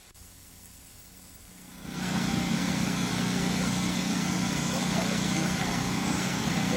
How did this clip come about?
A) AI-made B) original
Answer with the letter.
A